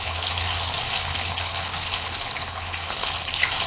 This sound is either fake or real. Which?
fake